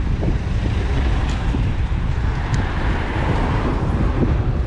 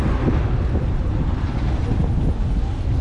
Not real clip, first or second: first